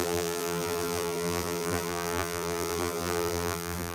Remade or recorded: remade